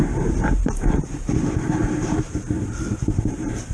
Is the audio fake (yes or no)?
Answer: yes